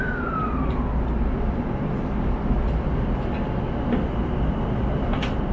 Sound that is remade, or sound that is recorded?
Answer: recorded